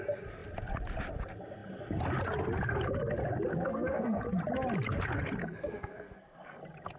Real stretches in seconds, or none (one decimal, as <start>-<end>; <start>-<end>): 0.0-3.5; 4.2-5.4; 6.6-7.0